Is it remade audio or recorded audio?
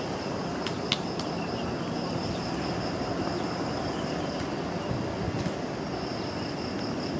recorded